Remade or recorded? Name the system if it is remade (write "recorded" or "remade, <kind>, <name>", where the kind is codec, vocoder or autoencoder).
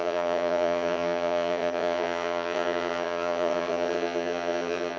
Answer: remade, vocoder, HiFi-GAN